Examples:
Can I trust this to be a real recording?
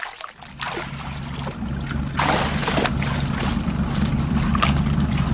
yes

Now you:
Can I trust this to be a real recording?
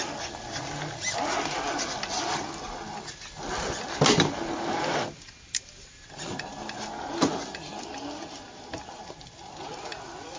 yes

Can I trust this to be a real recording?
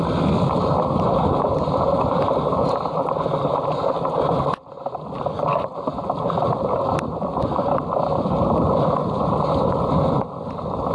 yes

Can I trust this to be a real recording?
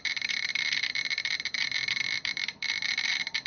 no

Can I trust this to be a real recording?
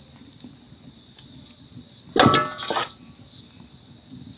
yes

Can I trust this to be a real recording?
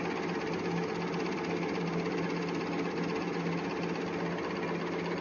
yes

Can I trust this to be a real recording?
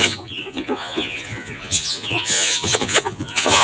no